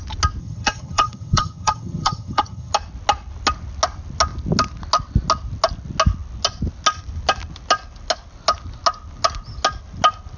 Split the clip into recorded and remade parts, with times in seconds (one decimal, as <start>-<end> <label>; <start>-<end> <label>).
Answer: 0.0-0.4 recorded; 0.4-2.7 remade; 2.7-10.4 recorded

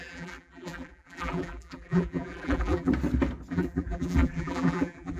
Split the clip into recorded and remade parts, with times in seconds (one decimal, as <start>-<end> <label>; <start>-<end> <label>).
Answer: 0.0-2.9 remade; 2.9-3.5 recorded; 3.5-5.2 remade

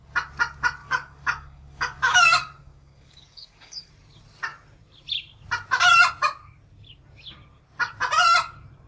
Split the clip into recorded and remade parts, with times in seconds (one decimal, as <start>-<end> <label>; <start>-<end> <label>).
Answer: 0.0-0.8 recorded; 0.8-3.9 remade; 3.9-8.9 recorded

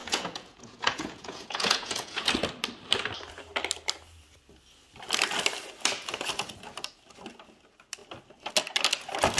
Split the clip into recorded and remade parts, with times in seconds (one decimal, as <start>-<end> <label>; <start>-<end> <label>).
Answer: 0.0-2.3 remade; 2.3-9.4 recorded

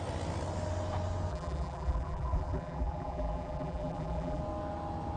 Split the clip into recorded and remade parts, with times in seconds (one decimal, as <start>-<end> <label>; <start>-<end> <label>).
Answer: 0.0-1.3 recorded; 1.3-4.4 remade; 4.4-5.2 recorded